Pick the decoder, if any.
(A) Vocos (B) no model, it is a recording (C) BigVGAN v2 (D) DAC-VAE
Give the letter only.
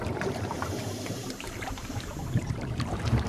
C